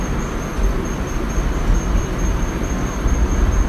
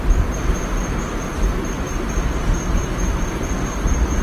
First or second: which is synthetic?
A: second